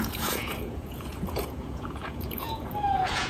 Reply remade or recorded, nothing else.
remade